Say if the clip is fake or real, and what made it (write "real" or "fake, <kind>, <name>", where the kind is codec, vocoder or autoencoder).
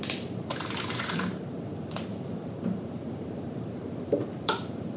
fake, vocoder, BigVGAN v2